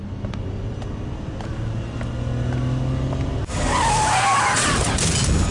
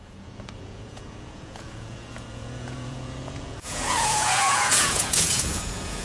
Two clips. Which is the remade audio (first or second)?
second